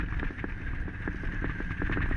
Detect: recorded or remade recorded